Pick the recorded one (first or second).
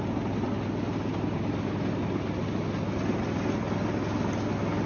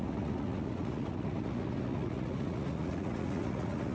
first